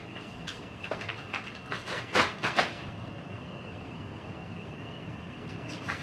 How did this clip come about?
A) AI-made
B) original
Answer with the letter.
A